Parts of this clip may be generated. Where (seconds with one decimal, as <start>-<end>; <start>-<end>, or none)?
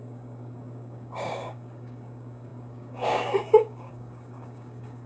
0.0-5.1